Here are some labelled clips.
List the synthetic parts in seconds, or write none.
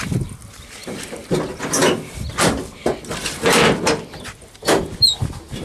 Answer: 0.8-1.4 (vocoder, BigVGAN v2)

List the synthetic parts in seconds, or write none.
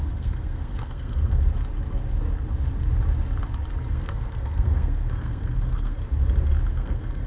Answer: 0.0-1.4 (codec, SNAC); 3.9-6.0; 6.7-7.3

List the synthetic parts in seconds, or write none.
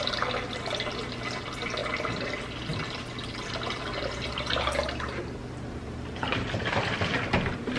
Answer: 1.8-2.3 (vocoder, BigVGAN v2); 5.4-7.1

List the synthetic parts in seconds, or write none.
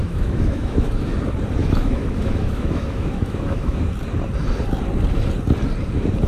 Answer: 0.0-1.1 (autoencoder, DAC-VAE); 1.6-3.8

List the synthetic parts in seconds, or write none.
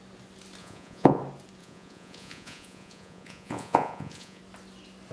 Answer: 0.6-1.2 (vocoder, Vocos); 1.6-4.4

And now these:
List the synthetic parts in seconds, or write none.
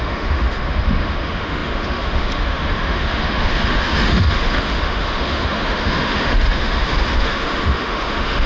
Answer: 0.0-8.5 (autoencoder, DAC-VAE)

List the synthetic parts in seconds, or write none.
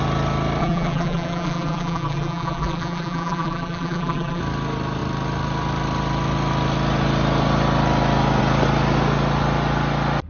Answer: 0.6-4.4 (vocoder, BigVGAN v2)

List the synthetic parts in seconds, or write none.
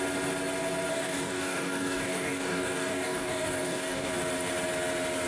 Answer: 0.9-4.1 (codec, DAC)